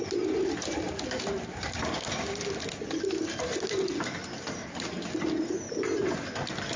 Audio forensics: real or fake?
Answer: real